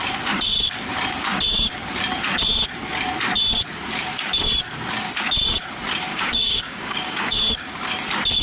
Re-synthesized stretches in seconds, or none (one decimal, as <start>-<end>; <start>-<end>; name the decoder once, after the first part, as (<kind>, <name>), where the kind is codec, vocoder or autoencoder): 6.1-7.4 (codec, DAC)